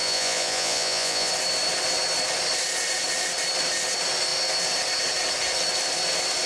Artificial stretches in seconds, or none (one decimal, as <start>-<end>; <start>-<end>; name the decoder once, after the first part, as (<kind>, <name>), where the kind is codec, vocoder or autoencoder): 0.0-1.3 (vocoder, Vocos)